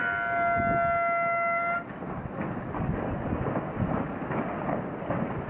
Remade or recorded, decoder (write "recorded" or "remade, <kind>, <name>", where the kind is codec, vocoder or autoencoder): recorded